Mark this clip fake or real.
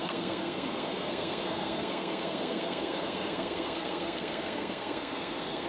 fake